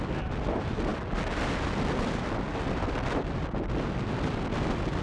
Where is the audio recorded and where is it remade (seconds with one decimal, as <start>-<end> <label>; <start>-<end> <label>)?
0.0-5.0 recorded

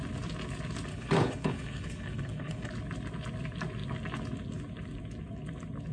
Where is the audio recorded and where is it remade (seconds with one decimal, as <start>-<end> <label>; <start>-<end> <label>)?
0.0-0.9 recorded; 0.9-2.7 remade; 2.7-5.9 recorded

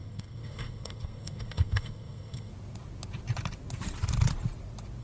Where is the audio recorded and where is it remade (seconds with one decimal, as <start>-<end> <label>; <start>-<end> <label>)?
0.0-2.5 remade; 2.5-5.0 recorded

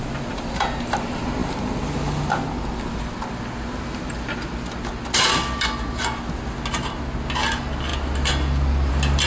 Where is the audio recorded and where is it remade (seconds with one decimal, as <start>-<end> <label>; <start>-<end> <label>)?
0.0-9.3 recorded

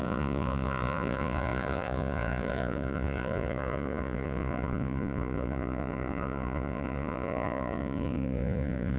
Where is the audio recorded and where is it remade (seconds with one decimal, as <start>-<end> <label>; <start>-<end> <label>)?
0.0-9.0 remade